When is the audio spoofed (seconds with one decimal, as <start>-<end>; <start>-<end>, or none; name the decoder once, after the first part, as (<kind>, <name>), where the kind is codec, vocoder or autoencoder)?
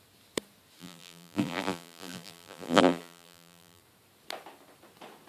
0.8-3.8 (vocoder, BigVGAN v2)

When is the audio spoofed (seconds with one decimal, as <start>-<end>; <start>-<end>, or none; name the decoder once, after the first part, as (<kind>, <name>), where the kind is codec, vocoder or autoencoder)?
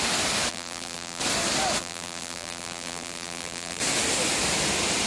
0.5-1.2 (vocoder, BigVGAN v2); 1.8-3.8